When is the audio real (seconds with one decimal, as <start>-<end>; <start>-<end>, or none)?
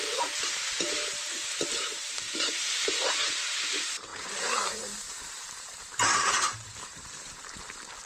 none